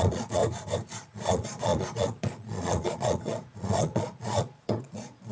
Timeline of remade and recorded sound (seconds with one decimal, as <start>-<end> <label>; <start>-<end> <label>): 0.0-0.4 remade; 0.4-1.0 recorded; 1.0-5.3 remade